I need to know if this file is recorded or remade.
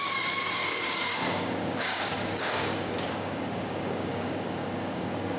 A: remade